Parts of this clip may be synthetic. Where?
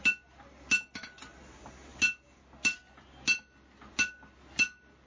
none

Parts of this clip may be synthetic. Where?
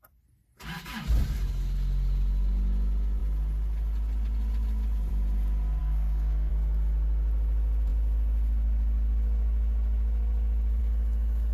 5.8-6.5